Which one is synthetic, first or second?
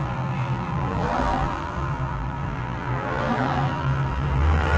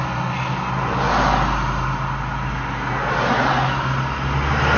first